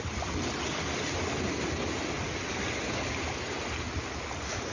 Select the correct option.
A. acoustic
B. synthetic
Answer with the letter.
A